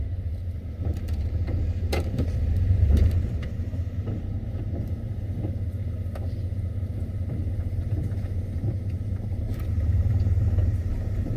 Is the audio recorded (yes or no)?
no